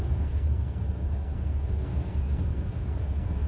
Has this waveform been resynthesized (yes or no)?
yes